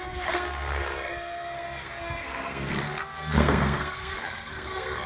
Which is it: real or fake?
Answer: fake